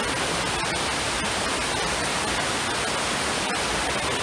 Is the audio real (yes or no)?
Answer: yes